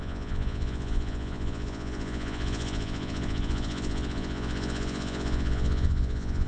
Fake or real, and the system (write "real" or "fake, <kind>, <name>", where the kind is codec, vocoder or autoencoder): fake, vocoder, Vocos